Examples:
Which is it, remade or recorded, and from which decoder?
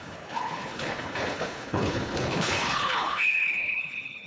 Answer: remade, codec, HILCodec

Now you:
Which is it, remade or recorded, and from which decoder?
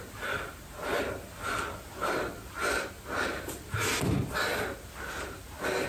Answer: recorded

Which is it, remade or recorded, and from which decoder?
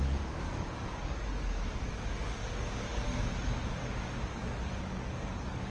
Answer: remade, codec, DAC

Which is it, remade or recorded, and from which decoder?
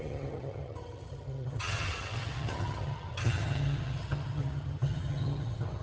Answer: remade, vocoder, HiFi-GAN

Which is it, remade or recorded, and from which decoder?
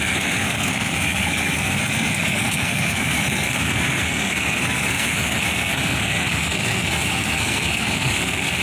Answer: remade, codec, SNAC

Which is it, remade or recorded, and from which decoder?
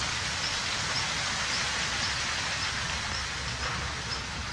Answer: recorded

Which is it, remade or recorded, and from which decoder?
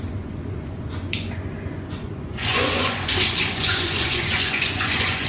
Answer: remade, vocoder, Vocos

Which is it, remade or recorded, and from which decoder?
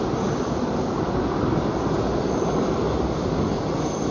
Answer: recorded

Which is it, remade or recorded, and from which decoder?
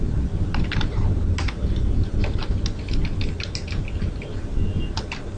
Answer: recorded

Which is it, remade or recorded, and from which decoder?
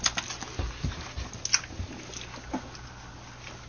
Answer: recorded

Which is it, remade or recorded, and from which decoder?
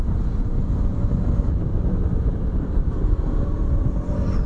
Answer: remade, vocoder, BigVGAN v2